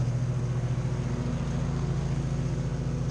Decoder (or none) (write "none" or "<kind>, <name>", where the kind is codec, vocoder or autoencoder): none